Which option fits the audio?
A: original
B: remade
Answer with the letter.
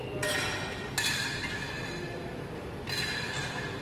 A